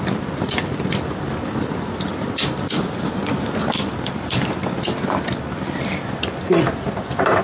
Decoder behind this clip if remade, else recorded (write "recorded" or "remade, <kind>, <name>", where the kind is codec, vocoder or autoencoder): remade, vocoder, BigVGAN v2